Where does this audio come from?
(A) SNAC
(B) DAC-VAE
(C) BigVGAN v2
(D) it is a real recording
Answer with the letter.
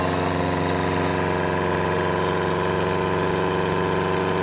D